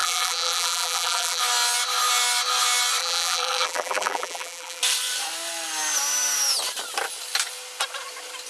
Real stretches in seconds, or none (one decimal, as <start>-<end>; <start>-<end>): 1.4-3.0; 4.8-8.5